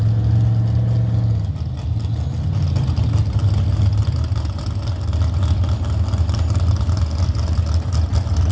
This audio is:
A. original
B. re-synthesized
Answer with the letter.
A